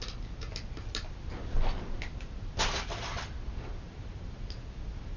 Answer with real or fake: real